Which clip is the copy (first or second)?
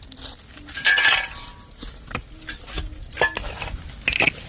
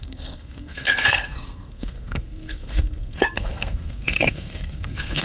second